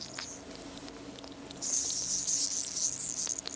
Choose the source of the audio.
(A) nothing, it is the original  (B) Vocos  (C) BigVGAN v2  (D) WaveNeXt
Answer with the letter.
A